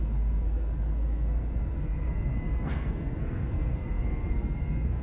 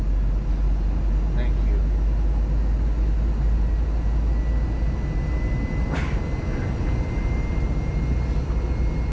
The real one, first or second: second